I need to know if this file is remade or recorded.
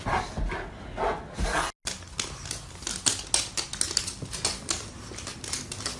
recorded